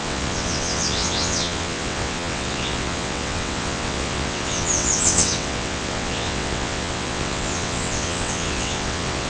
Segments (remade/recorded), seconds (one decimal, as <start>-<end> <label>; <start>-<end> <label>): 0.0-9.3 remade